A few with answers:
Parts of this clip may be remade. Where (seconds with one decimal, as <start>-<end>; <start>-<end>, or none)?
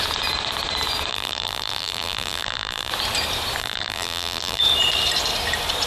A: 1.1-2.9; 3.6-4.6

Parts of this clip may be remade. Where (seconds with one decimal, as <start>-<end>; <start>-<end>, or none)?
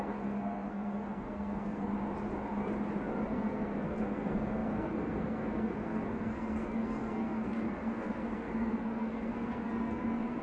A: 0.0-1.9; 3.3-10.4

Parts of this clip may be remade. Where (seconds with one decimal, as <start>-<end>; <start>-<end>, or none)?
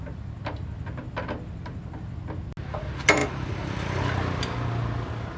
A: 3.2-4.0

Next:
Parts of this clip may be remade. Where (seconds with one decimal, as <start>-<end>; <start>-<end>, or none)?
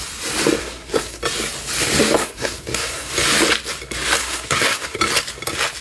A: 0.6-1.2; 2.2-3.1; 4.2-5.0